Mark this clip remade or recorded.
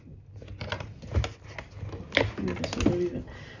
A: recorded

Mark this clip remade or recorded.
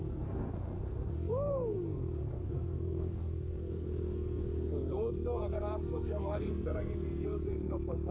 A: remade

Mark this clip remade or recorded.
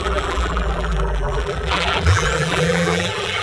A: remade